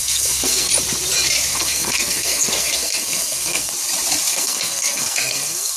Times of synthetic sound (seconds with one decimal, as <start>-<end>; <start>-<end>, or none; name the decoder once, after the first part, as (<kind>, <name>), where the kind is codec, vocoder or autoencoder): 0.0-0.7 (codec, SNAC); 1.5-3.7; 4.3-5.8